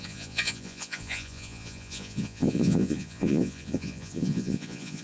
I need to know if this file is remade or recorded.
remade